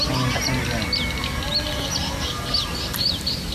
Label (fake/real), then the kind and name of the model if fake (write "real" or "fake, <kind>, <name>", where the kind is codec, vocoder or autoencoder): real